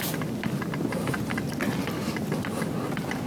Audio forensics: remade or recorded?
recorded